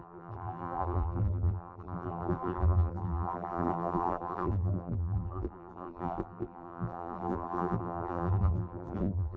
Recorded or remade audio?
remade